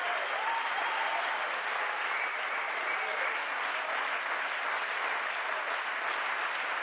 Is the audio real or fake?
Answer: real